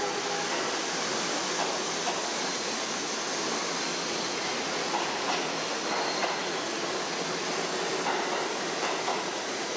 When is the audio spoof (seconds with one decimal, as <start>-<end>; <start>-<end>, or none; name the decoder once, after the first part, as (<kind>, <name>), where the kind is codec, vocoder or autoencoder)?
2.3-3.1 (vocoder, Vocos); 3.9-5.6; 6.2-6.9; 9.1-9.8